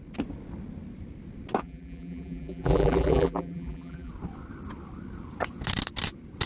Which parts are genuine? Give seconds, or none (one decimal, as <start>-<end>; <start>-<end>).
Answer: 0.0-1.6; 4.1-6.5